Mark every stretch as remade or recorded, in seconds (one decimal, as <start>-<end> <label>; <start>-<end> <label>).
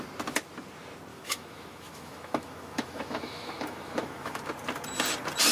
0.0-1.1 recorded; 1.1-4.4 remade; 4.4-5.5 recorded